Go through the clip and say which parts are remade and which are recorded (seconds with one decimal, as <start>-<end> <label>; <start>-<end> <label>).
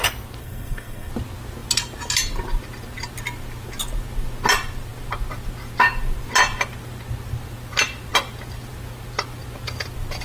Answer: 0.0-0.4 recorded; 0.4-1.1 remade; 1.1-10.2 recorded